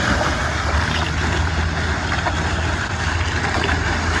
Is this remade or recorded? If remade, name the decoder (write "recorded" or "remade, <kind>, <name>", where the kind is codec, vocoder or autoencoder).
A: recorded